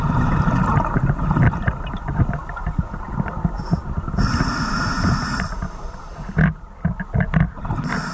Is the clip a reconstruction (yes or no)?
no